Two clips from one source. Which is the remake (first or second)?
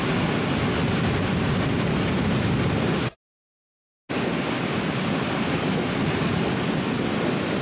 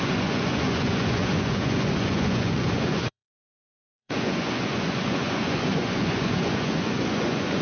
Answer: second